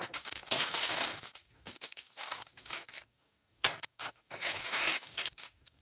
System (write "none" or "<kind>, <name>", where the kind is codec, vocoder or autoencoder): codec, DAC